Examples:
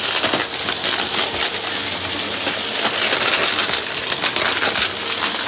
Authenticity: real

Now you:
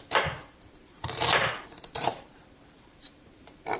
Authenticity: fake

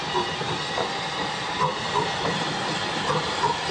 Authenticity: fake